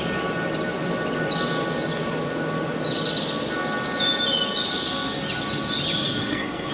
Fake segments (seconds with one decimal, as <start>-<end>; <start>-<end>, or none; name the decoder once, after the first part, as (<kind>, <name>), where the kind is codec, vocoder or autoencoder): 6.0-6.7 (codec, SNAC)